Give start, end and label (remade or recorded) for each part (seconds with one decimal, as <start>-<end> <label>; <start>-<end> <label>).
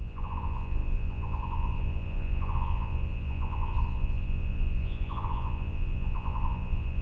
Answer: 0.0-7.0 remade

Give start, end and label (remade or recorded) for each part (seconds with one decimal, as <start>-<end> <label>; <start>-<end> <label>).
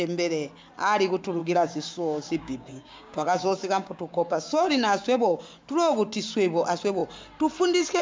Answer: 0.0-1.4 recorded; 1.4-5.4 remade; 5.4-8.0 recorded